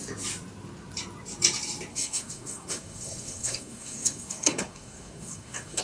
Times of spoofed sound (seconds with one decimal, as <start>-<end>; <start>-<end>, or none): 1.9-5.8